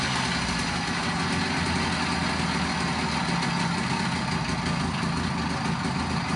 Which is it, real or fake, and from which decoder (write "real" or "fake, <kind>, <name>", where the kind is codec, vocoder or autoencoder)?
real